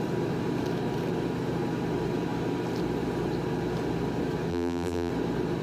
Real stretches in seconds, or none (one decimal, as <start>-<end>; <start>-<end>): 0.0-4.5; 5.1-5.6